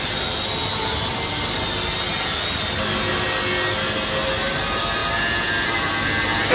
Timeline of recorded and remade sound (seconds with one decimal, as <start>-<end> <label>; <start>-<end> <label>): 0.0-6.5 recorded

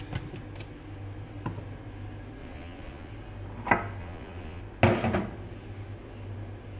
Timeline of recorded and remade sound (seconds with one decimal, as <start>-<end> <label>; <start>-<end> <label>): 0.0-2.4 recorded; 2.4-3.1 remade; 3.1-4.0 recorded; 4.0-4.6 remade; 4.6-6.8 recorded